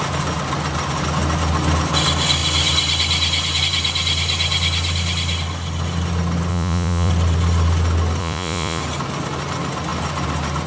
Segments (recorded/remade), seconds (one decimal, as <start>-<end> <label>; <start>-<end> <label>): 0.0-6.5 recorded; 6.5-7.1 remade; 7.1-8.2 recorded; 8.2-8.8 remade; 8.8-10.7 recorded